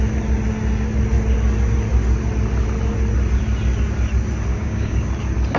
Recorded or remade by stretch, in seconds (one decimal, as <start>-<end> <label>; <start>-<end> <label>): 0.0-4.5 recorded; 4.5-5.1 remade; 5.1-5.6 recorded